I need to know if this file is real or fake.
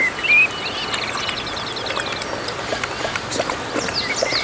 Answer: real